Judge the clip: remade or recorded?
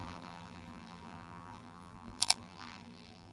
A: remade